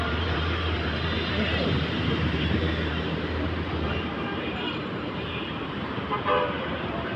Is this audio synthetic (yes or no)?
yes